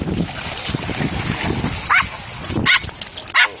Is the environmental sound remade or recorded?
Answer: recorded